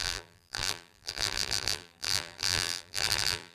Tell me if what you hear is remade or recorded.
remade